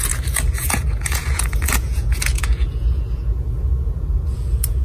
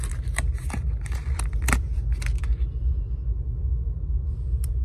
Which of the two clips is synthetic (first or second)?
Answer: first